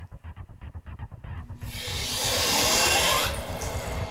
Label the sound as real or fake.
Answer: real